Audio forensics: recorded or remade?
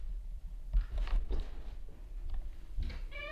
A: remade